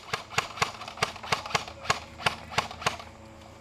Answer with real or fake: real